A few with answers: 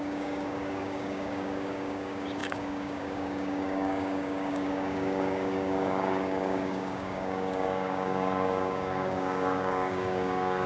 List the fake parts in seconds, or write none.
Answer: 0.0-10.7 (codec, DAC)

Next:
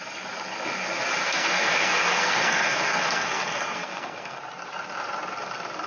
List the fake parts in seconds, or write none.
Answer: 1.2-4.4 (codec, SNAC)

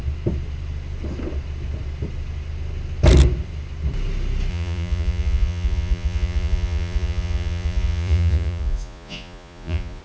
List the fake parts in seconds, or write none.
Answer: 4.5-10.0 (vocoder, Vocos)

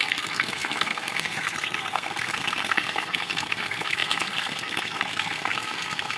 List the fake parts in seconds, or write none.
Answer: 0.0-6.2 (codec, SNAC)

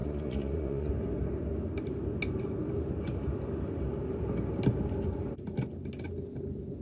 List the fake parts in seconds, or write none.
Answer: 0.0-0.9 (vocoder, Vocos)